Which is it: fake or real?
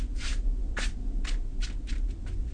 real